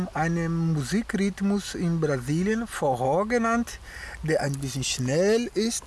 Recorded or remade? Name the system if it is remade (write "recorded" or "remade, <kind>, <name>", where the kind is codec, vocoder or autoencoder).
recorded